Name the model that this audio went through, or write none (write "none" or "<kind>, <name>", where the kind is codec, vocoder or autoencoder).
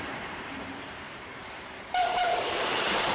vocoder, BigVGAN v2